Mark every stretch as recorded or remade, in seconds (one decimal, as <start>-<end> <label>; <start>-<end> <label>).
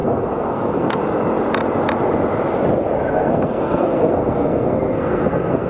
0.0-1.0 remade; 1.0-3.1 recorded; 3.1-5.7 remade